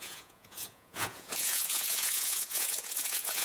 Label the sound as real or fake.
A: fake